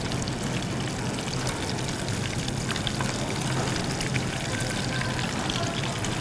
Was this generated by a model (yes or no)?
no